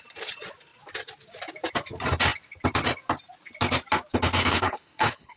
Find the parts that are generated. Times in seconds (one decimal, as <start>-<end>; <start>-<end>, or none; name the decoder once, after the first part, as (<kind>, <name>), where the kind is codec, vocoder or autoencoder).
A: 4.4-5.4 (codec, HILCodec)